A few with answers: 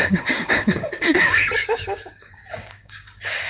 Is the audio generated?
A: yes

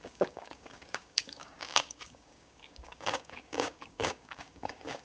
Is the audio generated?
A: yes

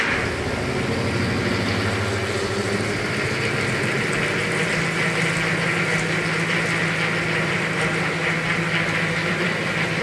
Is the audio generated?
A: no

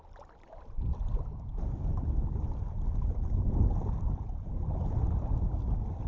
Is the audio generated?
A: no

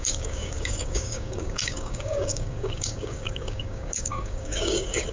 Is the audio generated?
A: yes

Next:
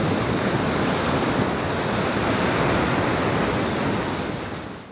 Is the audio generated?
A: no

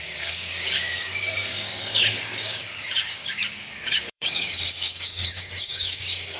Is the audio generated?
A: yes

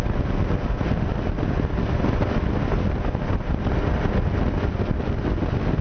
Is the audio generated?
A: no